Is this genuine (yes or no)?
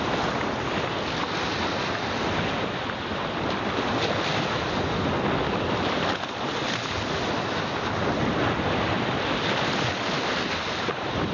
yes